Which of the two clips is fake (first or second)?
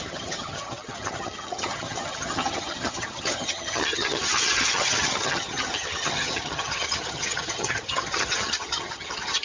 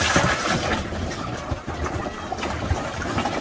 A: first